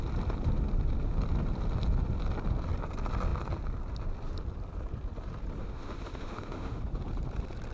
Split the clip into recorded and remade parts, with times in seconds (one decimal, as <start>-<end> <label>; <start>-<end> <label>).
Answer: 0.0-5.6 recorded; 5.6-6.8 remade; 6.8-7.7 recorded